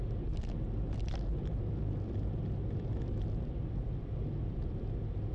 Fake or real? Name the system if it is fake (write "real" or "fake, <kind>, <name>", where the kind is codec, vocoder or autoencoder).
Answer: real